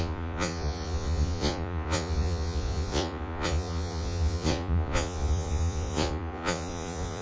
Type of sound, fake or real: fake